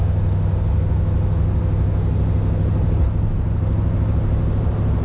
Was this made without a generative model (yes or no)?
yes